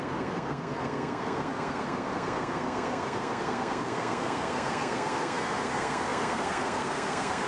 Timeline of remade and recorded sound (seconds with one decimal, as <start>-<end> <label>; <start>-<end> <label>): 0.0-7.5 remade